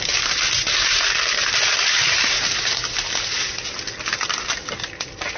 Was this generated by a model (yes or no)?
no